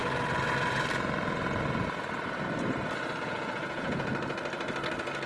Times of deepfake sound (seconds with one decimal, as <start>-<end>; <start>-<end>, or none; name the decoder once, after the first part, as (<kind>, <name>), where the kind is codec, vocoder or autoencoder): 3.2-4.1 (vocoder, Vocos)